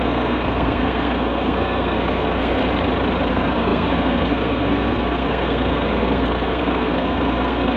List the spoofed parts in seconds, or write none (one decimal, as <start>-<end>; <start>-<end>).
0.0-2.6; 3.3-7.8